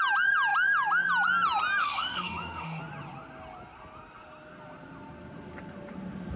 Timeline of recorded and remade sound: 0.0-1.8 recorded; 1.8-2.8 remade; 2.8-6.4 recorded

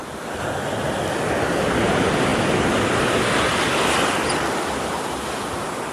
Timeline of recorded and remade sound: 0.0-5.9 recorded

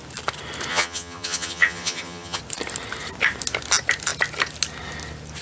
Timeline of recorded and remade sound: 0.0-0.7 recorded; 0.7-2.4 remade; 2.4-5.4 recorded